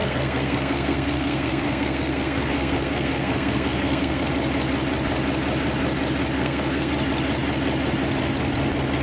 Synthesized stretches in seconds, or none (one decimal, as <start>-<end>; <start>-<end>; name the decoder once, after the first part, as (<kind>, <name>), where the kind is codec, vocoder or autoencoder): 0.0-4.3 (codec, SNAC); 6.4-6.9